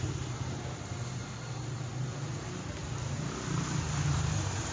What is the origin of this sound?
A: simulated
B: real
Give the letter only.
B